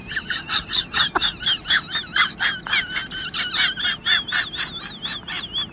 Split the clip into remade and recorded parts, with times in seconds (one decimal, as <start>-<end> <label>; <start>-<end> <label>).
0.0-5.7 recorded